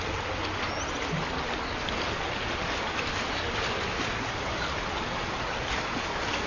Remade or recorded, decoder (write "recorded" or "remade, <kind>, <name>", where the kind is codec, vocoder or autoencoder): recorded